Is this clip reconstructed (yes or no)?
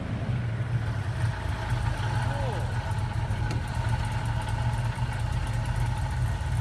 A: no